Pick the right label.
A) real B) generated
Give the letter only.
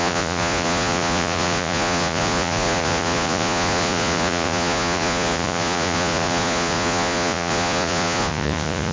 B